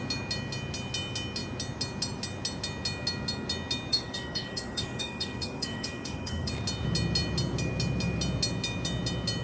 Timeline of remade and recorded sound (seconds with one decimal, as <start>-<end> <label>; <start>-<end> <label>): 0.0-3.9 recorded; 3.9-6.5 remade; 6.5-9.4 recorded